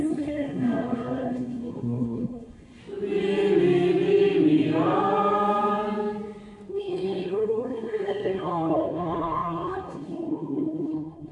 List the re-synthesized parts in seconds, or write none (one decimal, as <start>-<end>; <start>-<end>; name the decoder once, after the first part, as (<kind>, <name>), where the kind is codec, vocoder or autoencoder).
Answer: 0.0-2.8 (codec, SNAC); 6.7-11.3